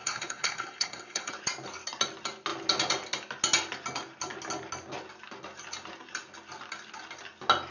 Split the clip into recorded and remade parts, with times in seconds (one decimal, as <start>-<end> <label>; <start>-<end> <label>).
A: 0.0-1.3 remade; 1.3-7.7 recorded

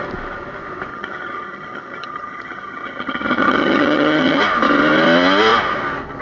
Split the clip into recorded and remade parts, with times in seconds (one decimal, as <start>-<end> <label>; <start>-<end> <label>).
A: 0.0-0.9 recorded; 0.9-4.4 remade; 4.4-6.2 recorded

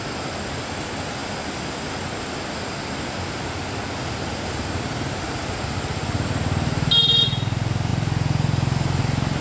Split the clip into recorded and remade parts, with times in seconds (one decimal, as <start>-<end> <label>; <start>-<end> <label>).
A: 0.0-9.4 recorded

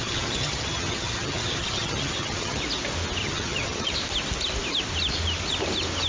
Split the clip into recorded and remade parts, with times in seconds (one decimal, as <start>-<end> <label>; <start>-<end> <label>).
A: 0.0-2.6 remade; 2.6-3.2 recorded; 3.2-3.9 remade; 3.9-6.1 recorded

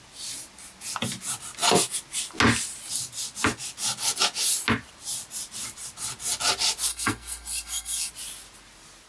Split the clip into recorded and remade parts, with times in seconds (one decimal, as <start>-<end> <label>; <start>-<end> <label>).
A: 0.0-6.9 recorded; 6.9-8.1 remade; 8.1-9.1 recorded

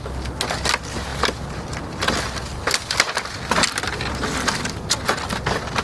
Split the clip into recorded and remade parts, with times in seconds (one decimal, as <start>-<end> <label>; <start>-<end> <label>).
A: 0.0-5.8 recorded